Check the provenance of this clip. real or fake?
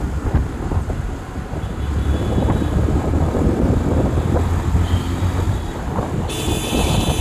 real